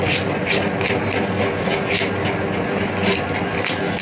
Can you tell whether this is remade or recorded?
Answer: recorded